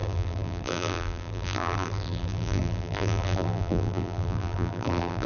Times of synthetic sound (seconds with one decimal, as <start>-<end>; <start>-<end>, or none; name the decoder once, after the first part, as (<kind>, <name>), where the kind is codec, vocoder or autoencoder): 0.0-5.3 (vocoder, BigVGAN v2)